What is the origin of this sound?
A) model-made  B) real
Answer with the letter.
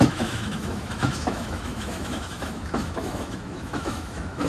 A